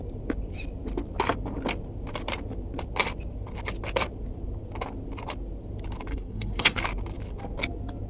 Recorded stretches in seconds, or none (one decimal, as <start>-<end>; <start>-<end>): 0.0-6.1; 6.8-8.1